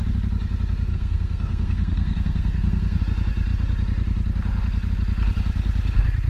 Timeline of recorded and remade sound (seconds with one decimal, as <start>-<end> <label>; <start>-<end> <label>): 0.0-0.9 recorded; 0.9-3.0 remade; 3.0-6.3 recorded